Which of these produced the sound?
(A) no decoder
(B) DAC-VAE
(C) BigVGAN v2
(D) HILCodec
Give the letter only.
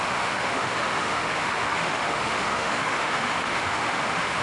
B